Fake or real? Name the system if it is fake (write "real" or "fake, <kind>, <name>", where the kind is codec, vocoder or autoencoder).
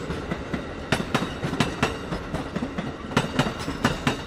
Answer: real